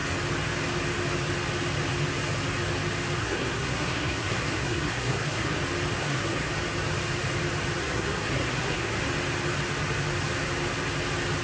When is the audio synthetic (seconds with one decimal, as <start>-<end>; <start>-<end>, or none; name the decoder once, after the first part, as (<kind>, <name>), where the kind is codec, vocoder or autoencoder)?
3.2-5.6 (codec, SNAC); 6.0-6.5; 7.8-9.0